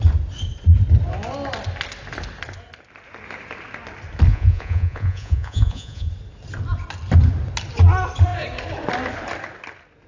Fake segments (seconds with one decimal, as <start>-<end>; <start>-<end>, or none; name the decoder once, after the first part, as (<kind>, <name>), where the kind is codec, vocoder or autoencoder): 4.3-6.1 (vocoder, Vocos)